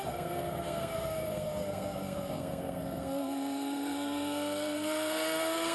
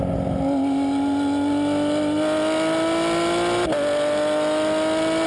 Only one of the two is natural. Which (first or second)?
second